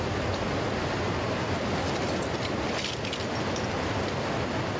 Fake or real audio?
real